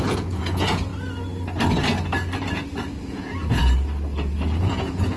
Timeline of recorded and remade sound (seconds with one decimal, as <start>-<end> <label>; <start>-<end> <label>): 0.0-0.9 remade; 0.9-3.0 recorded; 3.0-3.6 remade; 3.6-4.6 recorded; 4.6-5.2 remade